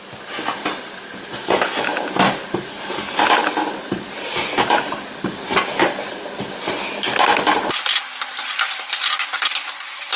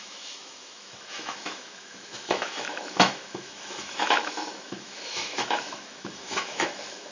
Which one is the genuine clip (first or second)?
first